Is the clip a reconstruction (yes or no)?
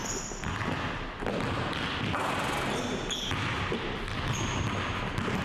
no